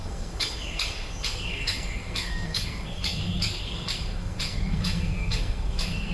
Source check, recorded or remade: remade